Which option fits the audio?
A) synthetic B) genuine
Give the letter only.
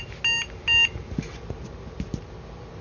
B